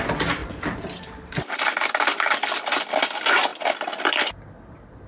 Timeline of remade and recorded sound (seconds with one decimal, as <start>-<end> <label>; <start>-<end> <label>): 0.0-0.4 recorded; 0.4-1.6 remade; 1.6-3.5 recorded; 3.5-4.4 remade; 4.4-5.1 recorded